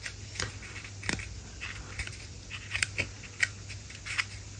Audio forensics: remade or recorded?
recorded